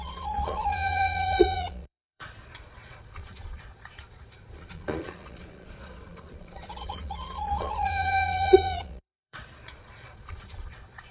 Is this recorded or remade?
remade